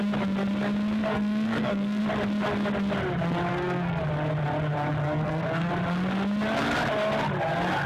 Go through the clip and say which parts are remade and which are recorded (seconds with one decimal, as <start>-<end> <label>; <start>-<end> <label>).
0.0-1.1 recorded; 1.1-2.0 remade; 2.0-3.5 recorded; 3.5-4.0 remade; 4.0-5.0 recorded; 5.0-5.7 remade; 5.7-7.9 recorded